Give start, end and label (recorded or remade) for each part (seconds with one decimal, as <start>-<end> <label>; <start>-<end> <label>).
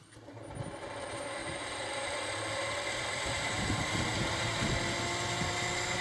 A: 0.0-1.4 recorded; 1.4-4.7 remade; 4.7-6.0 recorded